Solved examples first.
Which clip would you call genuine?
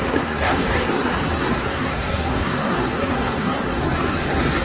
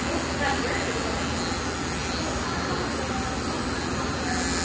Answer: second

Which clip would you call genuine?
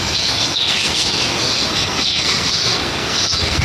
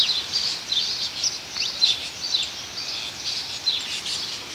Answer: second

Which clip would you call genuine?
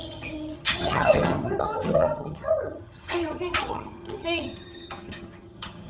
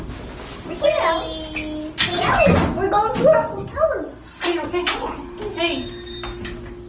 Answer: second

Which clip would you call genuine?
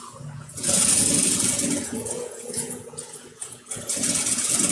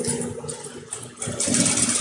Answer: second